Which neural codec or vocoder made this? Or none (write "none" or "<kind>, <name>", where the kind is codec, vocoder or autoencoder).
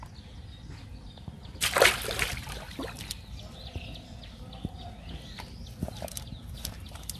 none